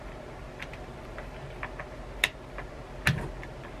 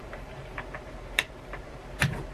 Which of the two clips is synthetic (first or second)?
second